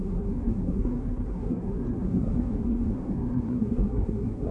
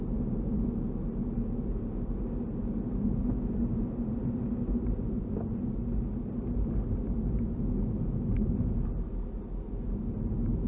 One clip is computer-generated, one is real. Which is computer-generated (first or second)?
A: first